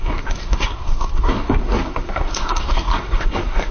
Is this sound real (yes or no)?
no